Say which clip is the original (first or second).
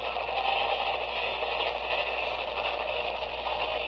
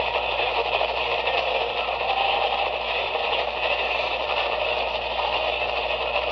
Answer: first